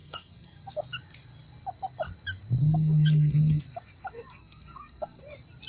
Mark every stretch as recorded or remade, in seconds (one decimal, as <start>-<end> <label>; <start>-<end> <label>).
0.0-0.7 remade; 0.7-2.6 recorded; 2.6-3.6 remade; 3.6-4.4 recorded; 4.4-5.2 remade; 5.2-5.7 recorded